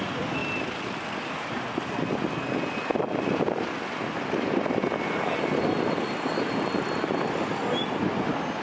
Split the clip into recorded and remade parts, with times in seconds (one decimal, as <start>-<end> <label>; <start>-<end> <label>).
0.0-8.6 recorded